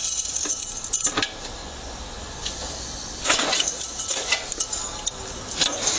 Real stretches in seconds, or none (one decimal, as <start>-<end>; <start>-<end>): 0.6-1.6; 4.5-6.0